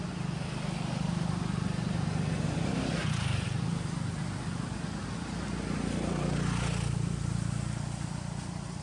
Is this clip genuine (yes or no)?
yes